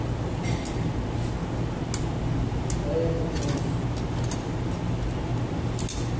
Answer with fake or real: real